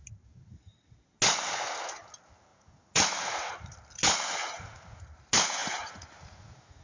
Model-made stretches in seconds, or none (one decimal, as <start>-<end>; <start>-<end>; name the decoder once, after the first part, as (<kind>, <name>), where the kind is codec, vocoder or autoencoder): 2.5-3.5 (vocoder, Vocos); 4.4-5.0; 5.6-6.8